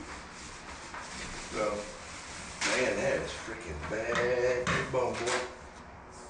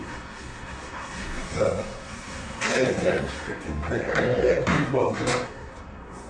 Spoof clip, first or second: second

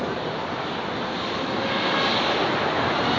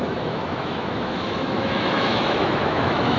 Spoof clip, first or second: second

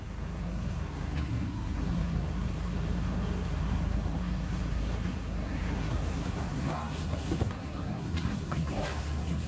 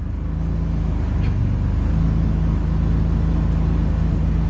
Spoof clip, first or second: first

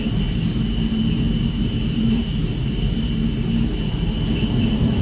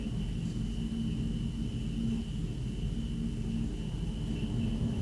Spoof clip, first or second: first